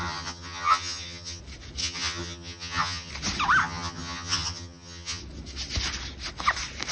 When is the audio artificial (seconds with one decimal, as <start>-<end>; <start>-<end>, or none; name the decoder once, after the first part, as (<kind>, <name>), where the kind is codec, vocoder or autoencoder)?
0.0-1.4 (vocoder, HiFi-GAN); 1.8-3.1; 3.6-5.2